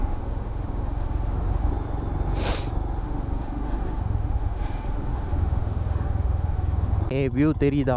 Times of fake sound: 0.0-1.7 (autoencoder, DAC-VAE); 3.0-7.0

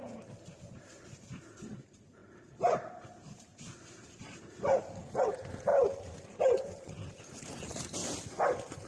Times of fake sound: 0.0-5.7 (vocoder, BigVGAN v2); 6.4-8.0

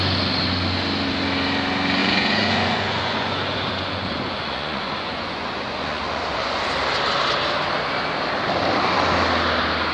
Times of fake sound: 2.0-6.6 (vocoder, Vocos)

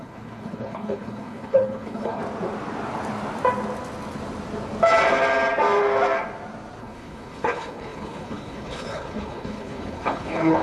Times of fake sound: 0.0-2.2 (codec, HILCodec); 6.8-10.6

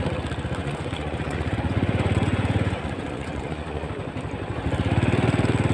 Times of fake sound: 0.6-3.9 (vocoder, Vocos)

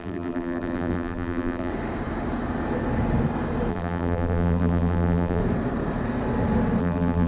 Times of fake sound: 0.0-1.7 (vocoder, BigVGAN v2); 3.7-5.4; 6.8-7.3

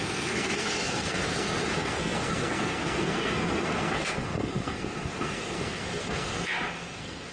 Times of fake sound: 0.0-7.3 (codec, SNAC)